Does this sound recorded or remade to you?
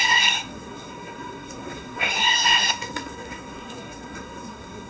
remade